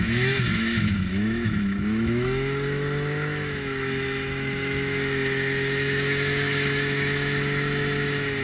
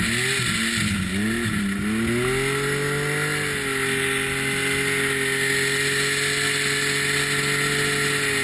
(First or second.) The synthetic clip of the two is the first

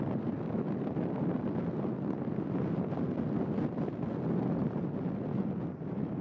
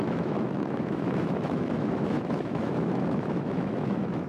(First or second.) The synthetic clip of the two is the second